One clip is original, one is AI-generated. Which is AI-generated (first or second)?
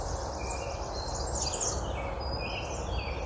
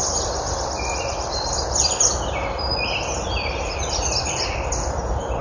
second